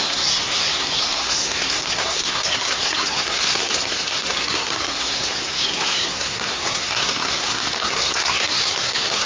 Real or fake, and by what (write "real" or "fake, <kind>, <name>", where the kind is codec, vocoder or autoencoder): fake, codec, SNAC